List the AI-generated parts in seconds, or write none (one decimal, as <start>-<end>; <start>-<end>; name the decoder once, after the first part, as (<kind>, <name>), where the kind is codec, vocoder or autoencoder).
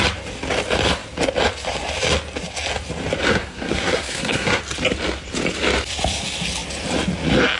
3.3-4.6 (codec, SNAC)